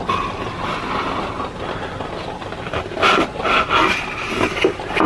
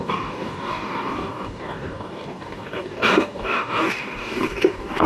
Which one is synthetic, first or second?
second